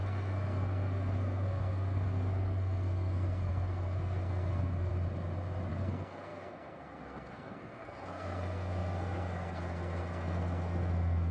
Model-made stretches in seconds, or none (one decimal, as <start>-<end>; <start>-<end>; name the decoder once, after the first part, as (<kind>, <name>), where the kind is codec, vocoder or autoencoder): 0.0-4.9 (codec, SNAC); 5.7-11.3